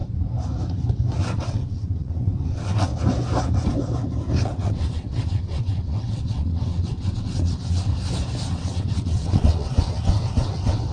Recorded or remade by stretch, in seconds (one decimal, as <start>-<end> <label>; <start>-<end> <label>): 0.0-1.2 recorded; 1.2-2.9 remade; 2.9-4.4 recorded; 4.4-7.9 remade; 7.9-8.5 recorded; 8.5-10.9 remade